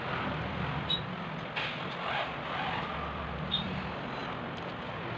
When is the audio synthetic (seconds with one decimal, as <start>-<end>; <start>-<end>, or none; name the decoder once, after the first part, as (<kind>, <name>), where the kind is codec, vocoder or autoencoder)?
none